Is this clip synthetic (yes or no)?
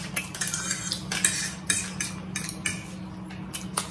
no